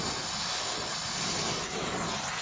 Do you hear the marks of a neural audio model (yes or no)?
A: no